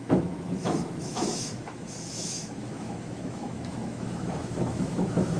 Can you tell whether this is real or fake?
fake